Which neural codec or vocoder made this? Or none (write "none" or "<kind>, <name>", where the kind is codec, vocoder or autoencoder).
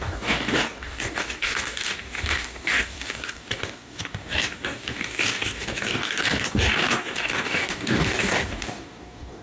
codec, DAC